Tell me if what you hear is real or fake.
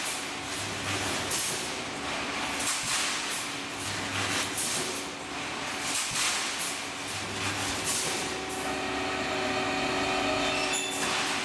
real